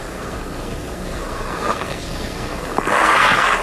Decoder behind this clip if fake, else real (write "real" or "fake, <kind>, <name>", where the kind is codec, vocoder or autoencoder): fake, codec, SNAC